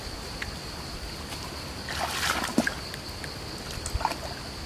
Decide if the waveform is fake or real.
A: real